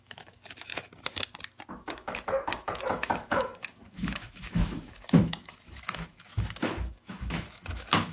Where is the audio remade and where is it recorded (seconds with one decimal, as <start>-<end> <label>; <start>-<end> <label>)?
0.0-0.7 remade; 0.7-1.7 recorded; 1.7-8.1 remade